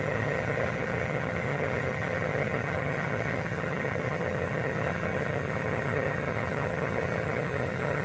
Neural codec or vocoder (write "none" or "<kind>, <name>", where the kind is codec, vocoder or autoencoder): vocoder, HiFi-GAN